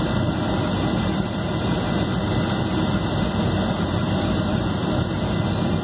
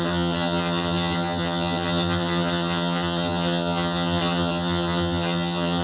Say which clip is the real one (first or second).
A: first